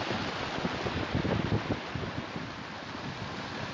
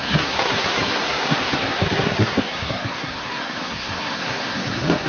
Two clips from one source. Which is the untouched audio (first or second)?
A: first